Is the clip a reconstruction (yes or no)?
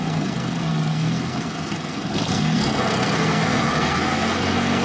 yes